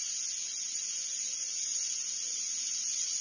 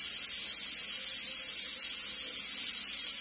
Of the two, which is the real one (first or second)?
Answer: second